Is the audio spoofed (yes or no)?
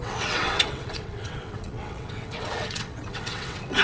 yes